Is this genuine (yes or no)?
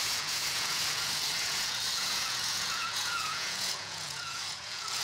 no